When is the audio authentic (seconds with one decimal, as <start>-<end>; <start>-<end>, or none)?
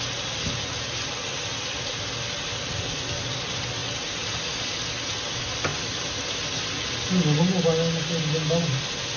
0.0-9.2